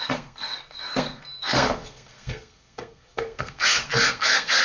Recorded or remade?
remade